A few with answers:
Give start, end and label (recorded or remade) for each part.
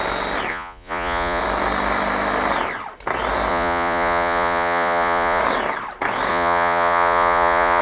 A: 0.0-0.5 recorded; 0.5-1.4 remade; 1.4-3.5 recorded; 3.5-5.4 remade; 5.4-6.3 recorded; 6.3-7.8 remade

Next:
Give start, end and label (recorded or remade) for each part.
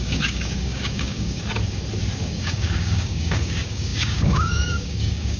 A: 0.0-1.4 remade; 1.4-2.2 recorded; 2.2-5.4 remade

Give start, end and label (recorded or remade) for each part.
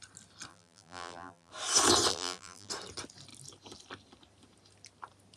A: 0.0-0.5 recorded; 0.5-1.5 remade; 1.5-2.1 recorded; 2.1-2.7 remade; 2.7-5.4 recorded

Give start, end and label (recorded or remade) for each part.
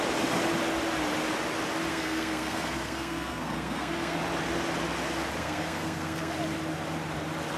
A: 0.0-1.9 recorded; 1.9-4.2 remade; 4.2-5.4 recorded; 5.4-6.3 remade; 6.3-7.6 recorded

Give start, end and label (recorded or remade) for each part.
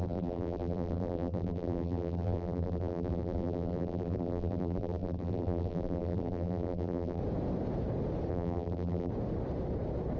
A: 0.0-7.2 remade; 7.2-8.3 recorded; 8.3-9.1 remade; 9.1-10.2 recorded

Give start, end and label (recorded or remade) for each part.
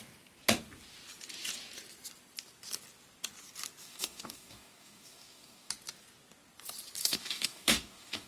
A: 0.0-3.8 recorded; 3.8-5.7 remade; 5.7-7.0 recorded; 7.0-8.3 remade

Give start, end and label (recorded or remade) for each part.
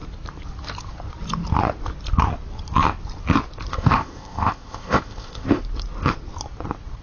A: 0.0-3.7 recorded; 3.7-5.6 remade; 5.6-7.0 recorded